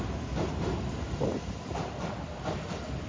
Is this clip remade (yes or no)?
no